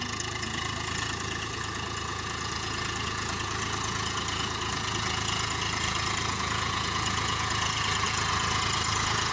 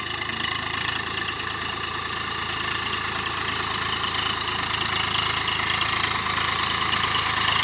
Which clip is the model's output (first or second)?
first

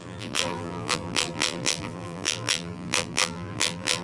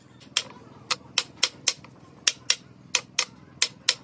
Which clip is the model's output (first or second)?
first